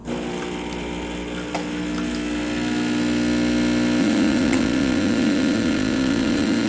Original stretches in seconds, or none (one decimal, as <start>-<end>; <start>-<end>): 0.0-4.0